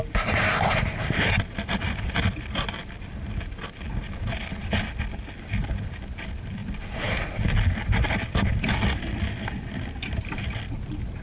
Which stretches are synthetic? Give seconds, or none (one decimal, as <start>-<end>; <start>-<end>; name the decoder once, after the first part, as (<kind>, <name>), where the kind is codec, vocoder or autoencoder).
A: none